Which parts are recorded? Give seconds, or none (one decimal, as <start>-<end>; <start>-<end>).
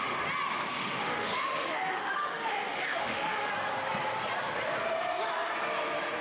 0.0-0.7; 3.5-6.2